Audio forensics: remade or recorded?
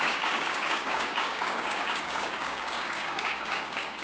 remade